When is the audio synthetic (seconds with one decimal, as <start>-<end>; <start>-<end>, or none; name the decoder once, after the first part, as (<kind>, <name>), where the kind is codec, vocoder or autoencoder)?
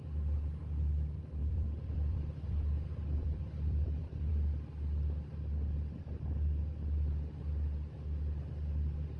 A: 1.4-4.3 (vocoder, BigVGAN v2)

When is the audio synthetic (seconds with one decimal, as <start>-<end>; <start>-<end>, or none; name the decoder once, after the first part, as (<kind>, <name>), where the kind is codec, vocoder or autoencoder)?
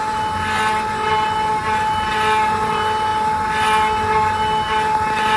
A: none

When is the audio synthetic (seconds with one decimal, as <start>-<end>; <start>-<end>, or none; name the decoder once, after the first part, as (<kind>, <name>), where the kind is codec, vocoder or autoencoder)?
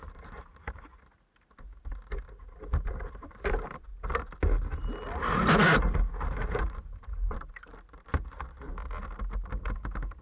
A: 0.0-0.9 (vocoder, BigVGAN v2); 2.9-3.9; 6.5-7.7; 9.6-10.2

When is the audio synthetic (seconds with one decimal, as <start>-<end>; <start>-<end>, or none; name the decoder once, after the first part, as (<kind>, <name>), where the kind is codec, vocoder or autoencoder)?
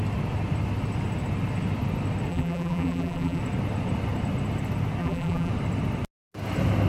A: 2.3-3.4 (vocoder, BigVGAN v2); 5.0-5.5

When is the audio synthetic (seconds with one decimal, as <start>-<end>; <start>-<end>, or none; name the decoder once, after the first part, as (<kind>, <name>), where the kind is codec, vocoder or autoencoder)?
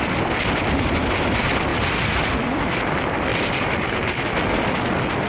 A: 3.3-3.8 (vocoder, BigVGAN v2)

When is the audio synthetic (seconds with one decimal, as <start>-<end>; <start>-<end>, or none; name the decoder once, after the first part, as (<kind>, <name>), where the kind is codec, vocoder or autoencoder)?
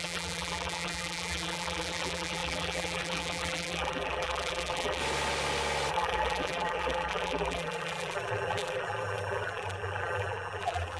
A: 0.0-5.0 (vocoder, BigVGAN v2); 5.9-11.0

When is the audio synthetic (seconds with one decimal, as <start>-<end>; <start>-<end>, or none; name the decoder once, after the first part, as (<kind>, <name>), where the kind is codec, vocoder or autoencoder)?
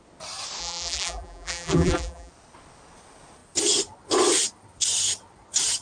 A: 0.6-2.3 (vocoder, BigVGAN v2)